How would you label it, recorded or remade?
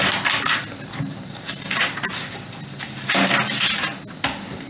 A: recorded